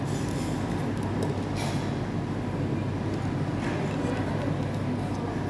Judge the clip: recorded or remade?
recorded